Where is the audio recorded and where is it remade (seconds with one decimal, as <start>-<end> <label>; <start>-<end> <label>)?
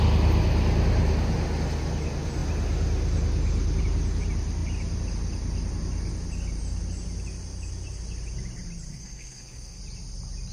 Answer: 0.0-8.9 recorded; 8.9-9.8 remade; 9.8-10.5 recorded